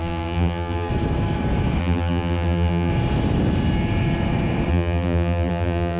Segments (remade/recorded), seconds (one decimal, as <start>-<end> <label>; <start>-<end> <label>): 0.0-0.9 remade; 0.9-1.8 recorded; 1.8-2.9 remade; 2.9-4.7 recorded; 4.7-6.0 remade